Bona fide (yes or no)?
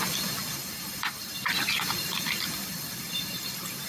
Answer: no